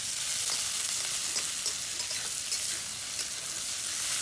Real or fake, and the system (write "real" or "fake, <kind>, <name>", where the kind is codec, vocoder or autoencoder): real